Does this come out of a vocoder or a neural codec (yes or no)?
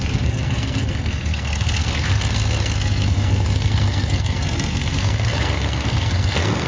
yes